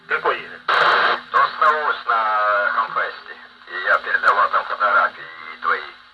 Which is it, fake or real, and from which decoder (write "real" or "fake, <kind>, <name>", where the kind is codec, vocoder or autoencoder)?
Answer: real